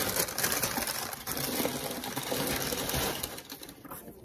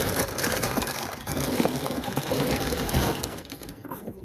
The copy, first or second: second